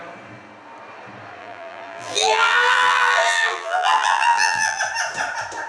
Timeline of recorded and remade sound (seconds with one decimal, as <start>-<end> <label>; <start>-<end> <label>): 0.0-1.4 recorded; 1.4-4.8 remade; 4.8-5.7 recorded